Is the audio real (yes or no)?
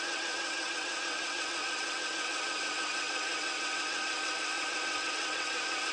no